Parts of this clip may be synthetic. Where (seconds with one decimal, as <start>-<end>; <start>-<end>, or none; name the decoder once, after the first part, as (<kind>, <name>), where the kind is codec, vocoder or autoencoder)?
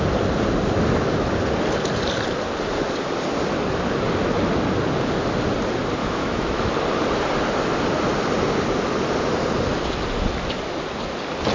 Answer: 6.0-6.7 (autoencoder, DAC-VAE)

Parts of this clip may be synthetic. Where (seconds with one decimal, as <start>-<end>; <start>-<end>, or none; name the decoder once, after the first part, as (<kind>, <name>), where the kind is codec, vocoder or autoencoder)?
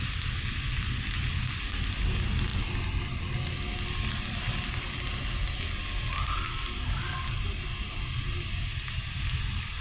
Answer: none